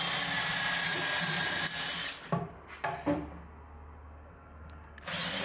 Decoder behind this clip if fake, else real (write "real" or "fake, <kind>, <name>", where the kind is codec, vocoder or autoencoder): real